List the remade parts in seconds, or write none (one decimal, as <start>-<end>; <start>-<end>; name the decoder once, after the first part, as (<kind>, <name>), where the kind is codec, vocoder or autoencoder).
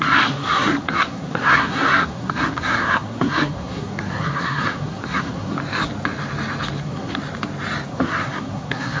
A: 0.0-5.6 (codec, SNAC); 6.8-7.2; 7.9-9.0